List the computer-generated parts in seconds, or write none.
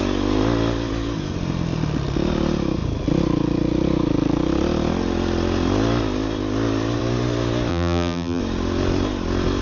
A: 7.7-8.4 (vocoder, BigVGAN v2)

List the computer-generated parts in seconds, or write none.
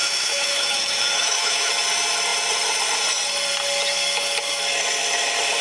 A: 0.0-1.7 (autoencoder, DAC-VAE)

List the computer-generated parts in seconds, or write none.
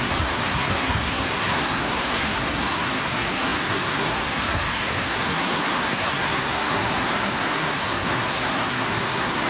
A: 0.0-9.5 (codec, SNAC)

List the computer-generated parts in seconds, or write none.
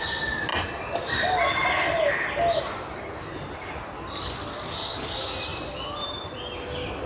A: 5.5-6.4 (vocoder, BigVGAN v2)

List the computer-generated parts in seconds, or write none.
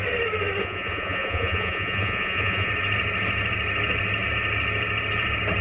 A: 0.6-2.7 (vocoder, Vocos)